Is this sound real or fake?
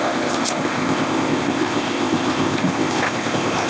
fake